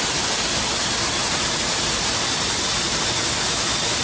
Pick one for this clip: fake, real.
real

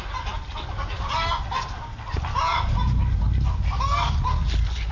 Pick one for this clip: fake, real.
real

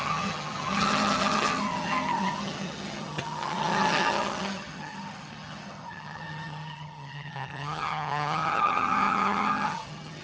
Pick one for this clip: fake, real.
fake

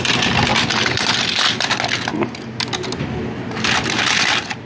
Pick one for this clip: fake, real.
real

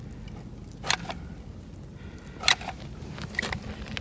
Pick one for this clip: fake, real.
real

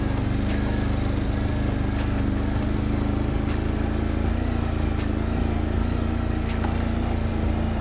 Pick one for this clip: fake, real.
real